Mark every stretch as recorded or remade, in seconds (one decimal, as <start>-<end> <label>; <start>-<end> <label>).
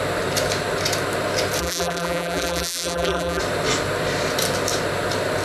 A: 0.0-1.6 recorded; 1.6-3.4 remade; 3.4-5.4 recorded